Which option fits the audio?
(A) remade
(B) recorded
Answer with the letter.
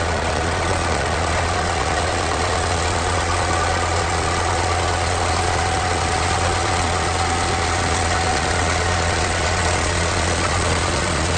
A